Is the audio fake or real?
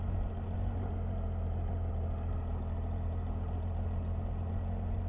real